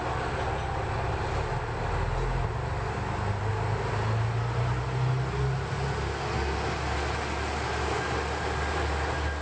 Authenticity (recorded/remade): recorded